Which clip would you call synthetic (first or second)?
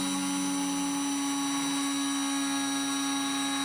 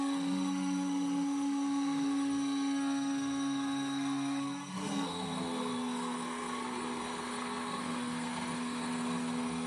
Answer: second